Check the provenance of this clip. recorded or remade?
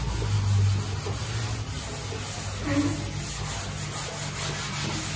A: recorded